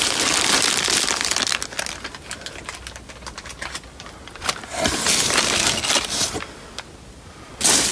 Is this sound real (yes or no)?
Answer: yes